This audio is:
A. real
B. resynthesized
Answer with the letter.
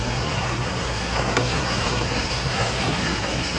B